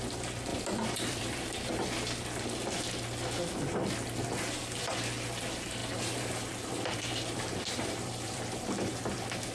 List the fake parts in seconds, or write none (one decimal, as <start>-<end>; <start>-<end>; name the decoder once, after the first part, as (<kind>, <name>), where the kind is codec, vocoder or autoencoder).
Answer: 0.5-1.7 (vocoder, BigVGAN v2); 5.8-8.4